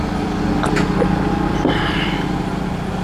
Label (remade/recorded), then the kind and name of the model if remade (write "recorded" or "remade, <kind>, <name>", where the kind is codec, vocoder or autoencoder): recorded